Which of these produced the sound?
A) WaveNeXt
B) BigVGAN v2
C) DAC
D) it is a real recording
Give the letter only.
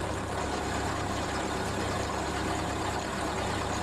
D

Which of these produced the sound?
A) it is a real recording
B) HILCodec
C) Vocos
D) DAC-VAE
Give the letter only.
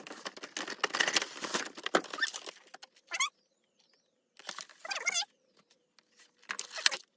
A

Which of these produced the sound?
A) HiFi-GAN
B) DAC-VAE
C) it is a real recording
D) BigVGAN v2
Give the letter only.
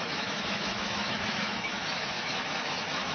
B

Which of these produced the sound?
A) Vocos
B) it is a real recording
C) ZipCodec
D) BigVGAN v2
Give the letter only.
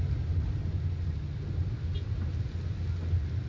B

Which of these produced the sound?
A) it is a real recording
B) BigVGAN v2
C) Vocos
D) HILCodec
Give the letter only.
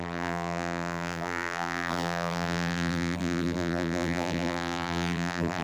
B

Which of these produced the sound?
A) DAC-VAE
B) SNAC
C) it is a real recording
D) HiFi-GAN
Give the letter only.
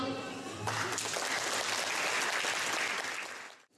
C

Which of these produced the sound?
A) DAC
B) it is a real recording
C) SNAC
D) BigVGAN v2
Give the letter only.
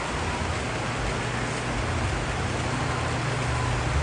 B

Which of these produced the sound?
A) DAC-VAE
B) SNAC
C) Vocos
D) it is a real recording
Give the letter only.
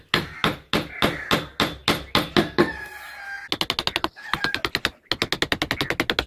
D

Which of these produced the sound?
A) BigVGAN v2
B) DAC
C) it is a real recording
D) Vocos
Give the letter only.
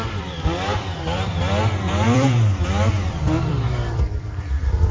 A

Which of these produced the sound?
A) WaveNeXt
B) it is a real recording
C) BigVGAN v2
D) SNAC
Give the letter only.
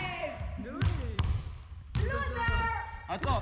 C